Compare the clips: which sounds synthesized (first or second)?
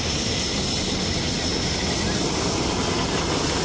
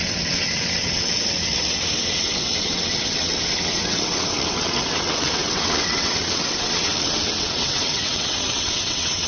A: second